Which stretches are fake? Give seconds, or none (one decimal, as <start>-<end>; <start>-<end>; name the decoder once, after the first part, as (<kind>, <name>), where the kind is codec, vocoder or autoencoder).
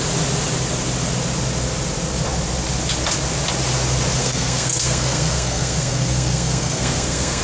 4.2-7.4 (codec, SNAC)